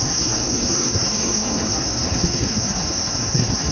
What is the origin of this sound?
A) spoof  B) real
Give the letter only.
A